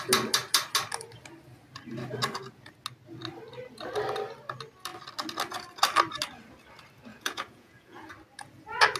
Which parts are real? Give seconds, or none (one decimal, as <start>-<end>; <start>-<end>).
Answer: 0.0-7.1; 8.1-9.0